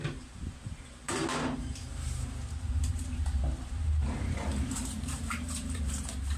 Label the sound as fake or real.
fake